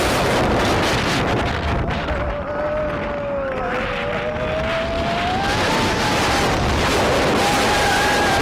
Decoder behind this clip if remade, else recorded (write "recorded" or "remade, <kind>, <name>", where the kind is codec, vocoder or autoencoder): recorded